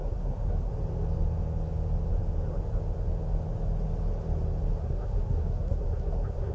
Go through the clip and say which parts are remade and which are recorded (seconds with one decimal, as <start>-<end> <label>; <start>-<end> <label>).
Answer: 0.0-0.7 remade; 0.7-4.8 recorded; 4.8-6.5 remade